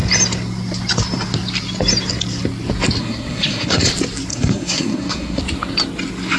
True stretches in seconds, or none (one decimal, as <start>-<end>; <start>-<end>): 0.0-3.0; 3.8-4.3; 5.4-6.4